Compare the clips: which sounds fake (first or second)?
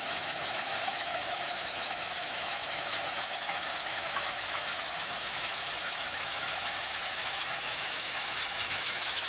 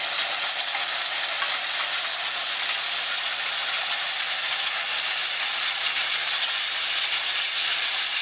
first